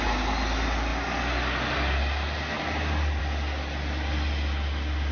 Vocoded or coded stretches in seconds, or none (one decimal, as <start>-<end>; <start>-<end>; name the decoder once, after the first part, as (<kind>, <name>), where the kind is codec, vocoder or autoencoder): none